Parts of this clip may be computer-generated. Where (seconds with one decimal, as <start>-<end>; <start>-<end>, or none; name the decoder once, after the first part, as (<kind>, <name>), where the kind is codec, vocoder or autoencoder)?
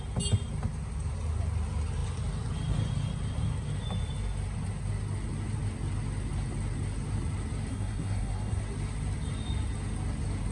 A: 7.7-8.6 (codec, SNAC)